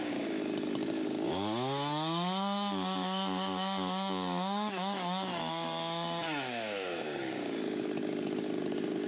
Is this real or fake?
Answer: fake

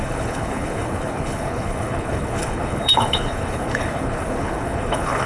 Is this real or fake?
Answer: fake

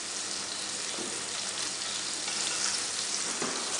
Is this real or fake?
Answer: real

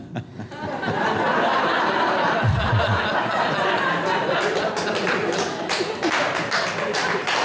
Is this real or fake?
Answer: real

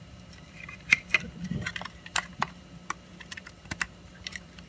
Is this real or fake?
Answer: fake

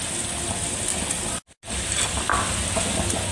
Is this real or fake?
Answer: real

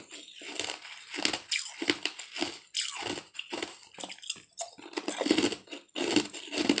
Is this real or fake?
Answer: real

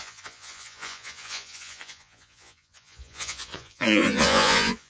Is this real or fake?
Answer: fake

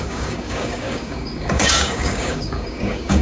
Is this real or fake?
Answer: fake